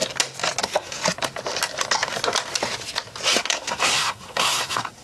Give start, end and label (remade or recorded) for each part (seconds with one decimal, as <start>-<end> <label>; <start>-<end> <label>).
0.0-0.6 recorded; 0.6-1.0 remade; 1.0-3.4 recorded; 3.4-5.0 remade